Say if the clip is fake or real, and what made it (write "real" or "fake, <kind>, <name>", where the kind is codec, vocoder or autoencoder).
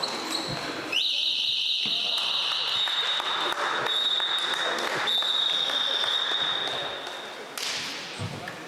real